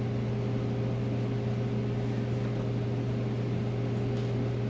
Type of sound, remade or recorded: recorded